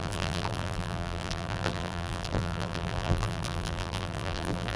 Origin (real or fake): fake